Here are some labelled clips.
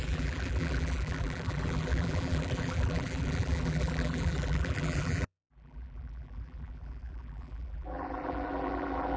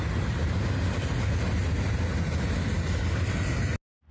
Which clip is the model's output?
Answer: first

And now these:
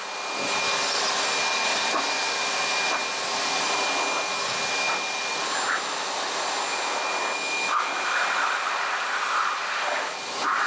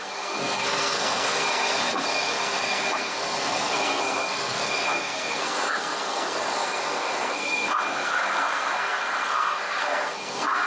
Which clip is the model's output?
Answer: second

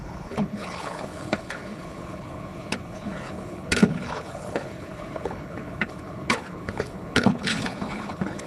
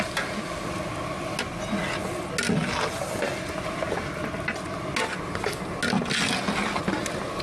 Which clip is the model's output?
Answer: first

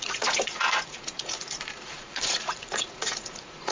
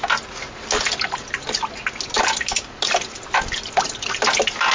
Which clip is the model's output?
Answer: first